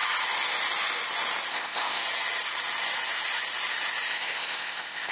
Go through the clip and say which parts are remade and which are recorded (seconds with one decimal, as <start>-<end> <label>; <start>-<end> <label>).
0.0-1.5 recorded; 1.5-2.0 remade; 2.0-4.1 recorded; 4.1-5.1 remade